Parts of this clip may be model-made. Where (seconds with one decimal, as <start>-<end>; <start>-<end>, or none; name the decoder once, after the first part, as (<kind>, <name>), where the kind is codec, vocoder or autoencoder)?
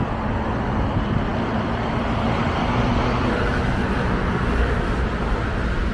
none